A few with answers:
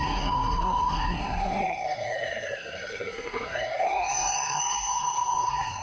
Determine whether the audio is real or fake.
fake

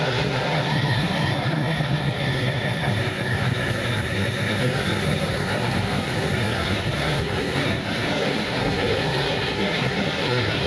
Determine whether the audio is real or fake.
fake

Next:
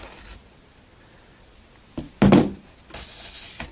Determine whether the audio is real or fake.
real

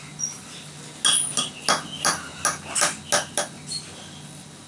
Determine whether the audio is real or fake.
real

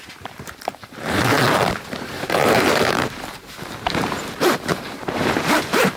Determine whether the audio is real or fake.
fake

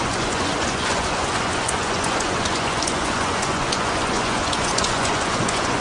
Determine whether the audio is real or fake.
fake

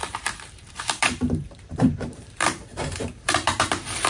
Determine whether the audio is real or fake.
fake